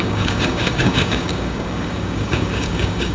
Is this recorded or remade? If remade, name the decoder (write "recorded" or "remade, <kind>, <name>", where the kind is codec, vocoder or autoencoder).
remade, codec, DAC